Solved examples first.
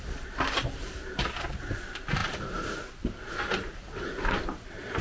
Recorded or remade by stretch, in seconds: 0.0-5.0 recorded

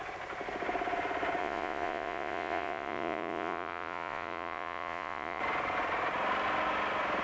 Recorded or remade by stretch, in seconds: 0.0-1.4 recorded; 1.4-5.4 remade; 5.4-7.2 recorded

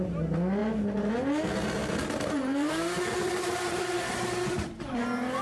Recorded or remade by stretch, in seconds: 0.0-1.8 recorded; 1.8-5.0 remade; 5.0-5.4 recorded